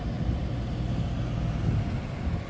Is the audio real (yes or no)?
yes